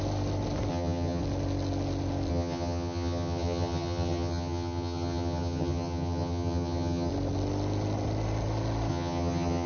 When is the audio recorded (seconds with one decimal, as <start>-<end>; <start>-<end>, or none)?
0.0-0.7; 1.2-2.3; 7.1-8.9